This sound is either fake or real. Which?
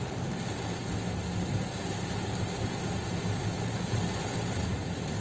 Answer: real